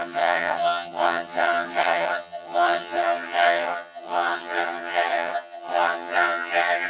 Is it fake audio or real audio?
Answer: fake